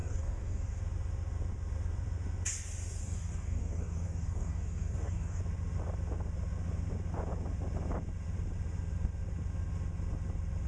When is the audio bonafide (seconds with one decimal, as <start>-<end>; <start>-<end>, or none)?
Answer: 0.8-3.0; 5.4-10.7

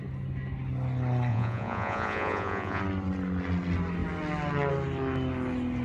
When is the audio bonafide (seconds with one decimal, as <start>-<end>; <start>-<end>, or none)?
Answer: 0.0-1.3; 2.8-5.8